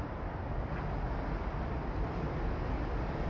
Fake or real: real